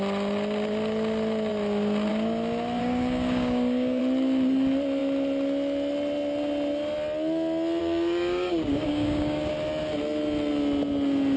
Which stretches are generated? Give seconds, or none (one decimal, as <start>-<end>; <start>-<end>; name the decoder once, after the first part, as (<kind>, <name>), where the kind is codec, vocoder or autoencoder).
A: 2.8-4.0 (codec, DAC); 7.8-9.5